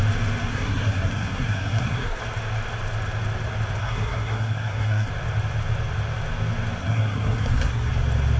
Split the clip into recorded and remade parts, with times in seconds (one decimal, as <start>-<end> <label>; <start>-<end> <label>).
0.0-0.5 recorded; 0.5-2.2 remade; 2.2-3.8 recorded; 3.8-5.1 remade; 5.1-6.8 recorded; 6.8-7.9 remade; 7.9-8.4 recorded